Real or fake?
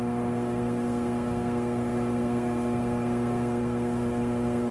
fake